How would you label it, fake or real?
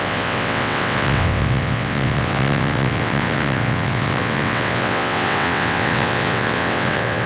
fake